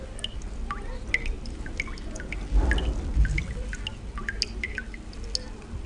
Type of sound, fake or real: real